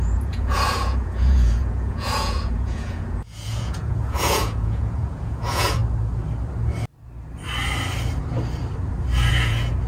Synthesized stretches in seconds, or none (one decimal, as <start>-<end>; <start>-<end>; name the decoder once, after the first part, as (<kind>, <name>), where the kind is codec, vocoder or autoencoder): 0.0-5.8 (vocoder, Vocos); 9.3-9.9